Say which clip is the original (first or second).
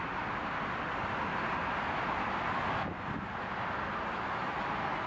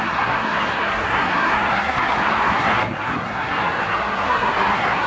first